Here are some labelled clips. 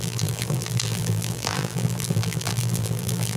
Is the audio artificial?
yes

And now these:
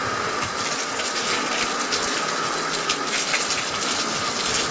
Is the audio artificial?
no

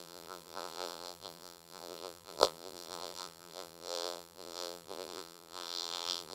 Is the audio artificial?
yes